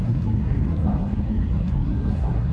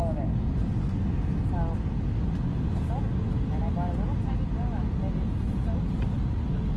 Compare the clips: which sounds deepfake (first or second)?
first